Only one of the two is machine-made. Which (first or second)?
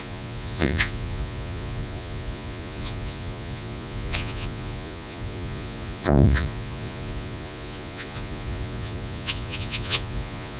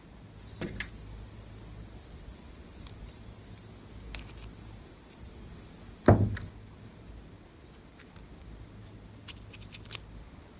first